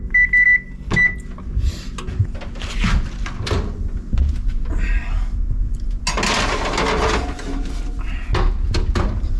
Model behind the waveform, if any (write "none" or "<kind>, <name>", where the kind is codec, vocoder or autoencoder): none